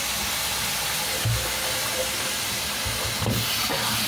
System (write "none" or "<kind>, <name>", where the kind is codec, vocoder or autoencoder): none